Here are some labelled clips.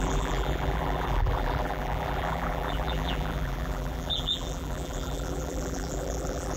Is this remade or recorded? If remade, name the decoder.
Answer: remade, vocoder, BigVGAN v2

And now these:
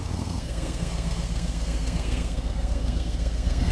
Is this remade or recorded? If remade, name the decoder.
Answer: remade, codec, SNAC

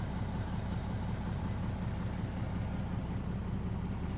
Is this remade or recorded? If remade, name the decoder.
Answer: recorded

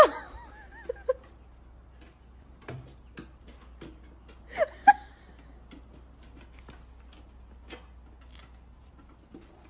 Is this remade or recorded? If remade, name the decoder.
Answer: recorded